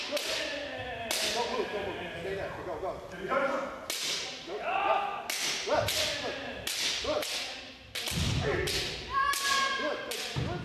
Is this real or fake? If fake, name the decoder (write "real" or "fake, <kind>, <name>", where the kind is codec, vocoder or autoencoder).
real